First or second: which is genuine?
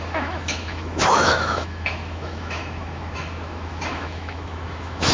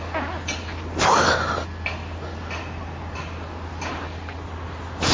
second